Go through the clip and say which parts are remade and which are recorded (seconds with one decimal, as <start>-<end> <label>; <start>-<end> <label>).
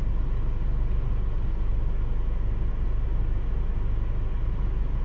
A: 0.0-5.0 recorded